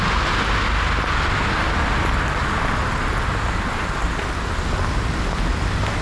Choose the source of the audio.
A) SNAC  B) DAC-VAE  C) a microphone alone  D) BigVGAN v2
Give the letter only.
C